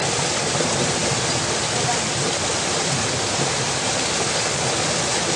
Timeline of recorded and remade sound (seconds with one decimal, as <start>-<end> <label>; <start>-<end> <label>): 0.0-5.4 recorded